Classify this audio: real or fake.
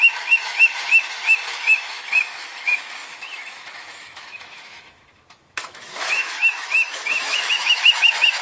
fake